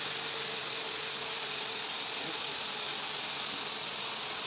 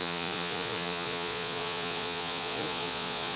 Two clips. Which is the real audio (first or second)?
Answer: first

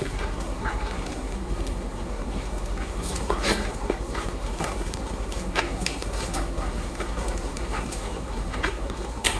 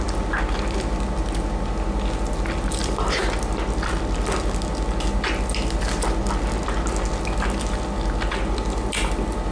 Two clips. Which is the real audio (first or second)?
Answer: second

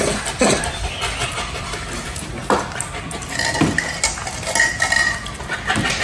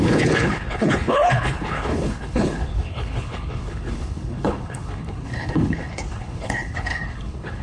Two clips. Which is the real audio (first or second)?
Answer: first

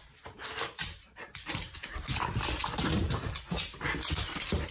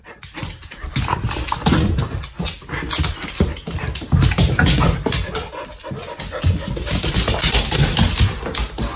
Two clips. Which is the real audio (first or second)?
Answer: second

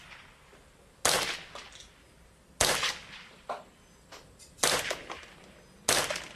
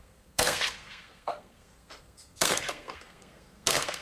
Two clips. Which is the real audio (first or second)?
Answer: first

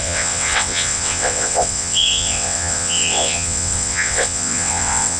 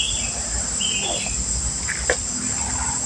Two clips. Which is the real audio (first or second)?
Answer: second